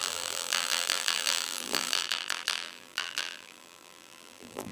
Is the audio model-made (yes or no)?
yes